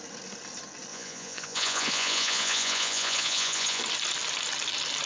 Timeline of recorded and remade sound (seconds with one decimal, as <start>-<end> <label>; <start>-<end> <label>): 0.0-0.9 recorded; 0.9-3.8 remade; 3.8-5.1 recorded